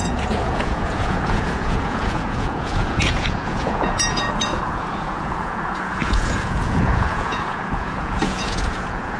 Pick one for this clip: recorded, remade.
remade